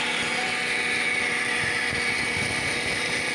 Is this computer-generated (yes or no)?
no